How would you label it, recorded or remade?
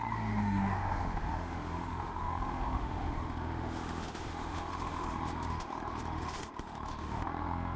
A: remade